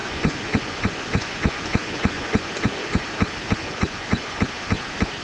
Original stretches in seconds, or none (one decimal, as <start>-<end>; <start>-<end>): 3.1-3.6; 4.4-5.2